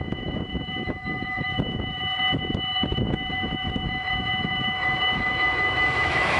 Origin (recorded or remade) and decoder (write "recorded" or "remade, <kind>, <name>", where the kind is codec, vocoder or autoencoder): remade, autoencoder, DAC-VAE